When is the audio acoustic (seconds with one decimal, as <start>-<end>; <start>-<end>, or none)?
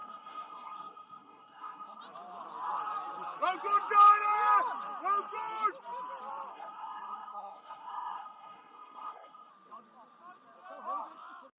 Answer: 2.0-6.5; 9.5-11.6